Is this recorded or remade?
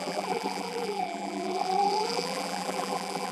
remade